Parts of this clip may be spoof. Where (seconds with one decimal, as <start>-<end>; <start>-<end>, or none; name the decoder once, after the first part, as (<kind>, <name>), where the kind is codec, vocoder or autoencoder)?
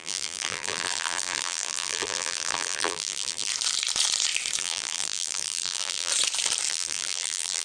0.0-3.5 (vocoder, BigVGAN v2); 4.6-6.1; 6.7-7.6